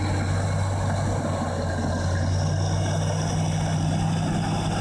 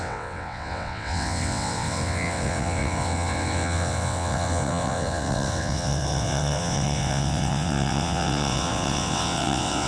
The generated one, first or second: second